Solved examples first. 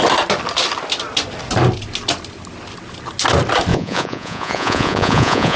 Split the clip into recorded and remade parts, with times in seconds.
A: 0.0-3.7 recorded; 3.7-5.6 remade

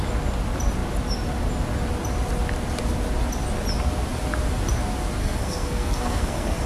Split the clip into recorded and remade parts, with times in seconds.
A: 0.0-5.2 recorded; 5.2-6.7 remade

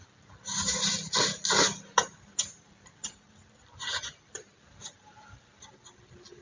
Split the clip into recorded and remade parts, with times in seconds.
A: 0.0-6.4 recorded

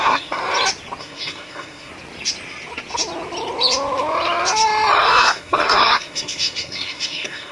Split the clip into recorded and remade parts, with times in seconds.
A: 0.0-0.4 remade; 0.4-1.0 recorded; 1.0-1.9 remade; 1.9-5.0 recorded; 5.0-7.5 remade